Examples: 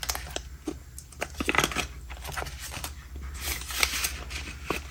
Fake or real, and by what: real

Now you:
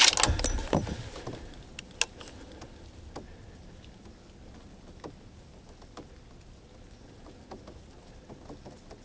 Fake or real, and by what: real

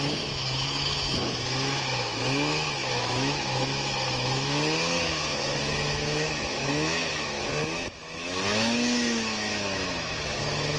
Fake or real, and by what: fake, autoencoder, DAC-VAE